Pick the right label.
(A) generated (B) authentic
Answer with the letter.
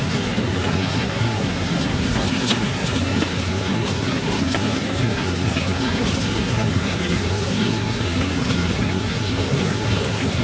A